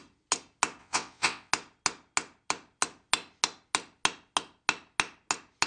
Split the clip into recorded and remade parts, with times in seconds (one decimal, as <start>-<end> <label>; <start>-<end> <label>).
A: 0.0-0.8 recorded; 0.8-1.5 remade; 1.5-5.7 recorded